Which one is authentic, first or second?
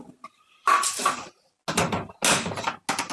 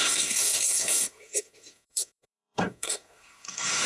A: first